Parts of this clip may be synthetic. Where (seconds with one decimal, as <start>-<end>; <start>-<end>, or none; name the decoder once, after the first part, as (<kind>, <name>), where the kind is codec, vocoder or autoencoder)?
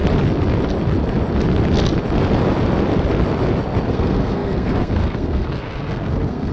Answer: 3.9-6.5 (codec, SNAC)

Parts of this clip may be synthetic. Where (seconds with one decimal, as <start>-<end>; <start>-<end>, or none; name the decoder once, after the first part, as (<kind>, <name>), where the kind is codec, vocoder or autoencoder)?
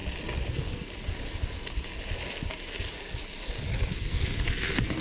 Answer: 0.5-0.9 (codec, SNAC); 3.9-5.0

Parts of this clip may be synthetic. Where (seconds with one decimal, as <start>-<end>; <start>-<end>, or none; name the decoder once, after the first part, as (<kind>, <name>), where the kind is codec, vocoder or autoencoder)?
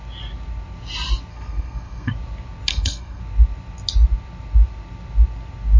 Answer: 1.3-2.1 (codec, SNAC); 2.7-3.2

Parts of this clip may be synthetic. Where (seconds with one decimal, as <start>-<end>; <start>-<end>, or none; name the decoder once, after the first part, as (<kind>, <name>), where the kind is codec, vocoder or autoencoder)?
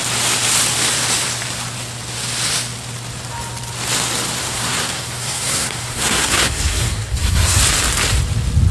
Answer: 4.4-7.6 (codec, SNAC)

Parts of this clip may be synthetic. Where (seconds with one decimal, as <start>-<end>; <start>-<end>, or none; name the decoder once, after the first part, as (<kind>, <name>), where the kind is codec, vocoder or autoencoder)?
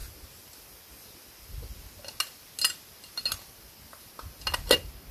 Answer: none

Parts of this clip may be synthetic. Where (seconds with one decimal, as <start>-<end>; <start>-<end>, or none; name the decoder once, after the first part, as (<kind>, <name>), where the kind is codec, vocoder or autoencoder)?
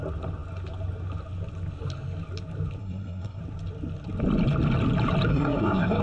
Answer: 2.8-3.4 (codec, SNAC); 5.3-6.0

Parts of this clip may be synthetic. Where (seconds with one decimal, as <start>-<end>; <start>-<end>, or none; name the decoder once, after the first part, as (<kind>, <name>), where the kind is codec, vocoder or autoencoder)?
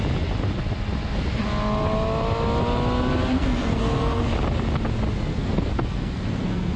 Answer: 3.3-4.2 (codec, SNAC); 5.3-6.8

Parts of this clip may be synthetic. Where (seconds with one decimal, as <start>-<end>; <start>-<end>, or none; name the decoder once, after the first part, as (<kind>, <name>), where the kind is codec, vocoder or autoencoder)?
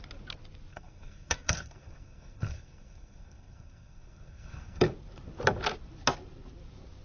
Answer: 0.7-4.9 (codec, SNAC)